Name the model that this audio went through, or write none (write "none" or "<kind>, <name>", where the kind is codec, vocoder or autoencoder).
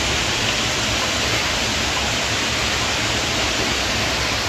none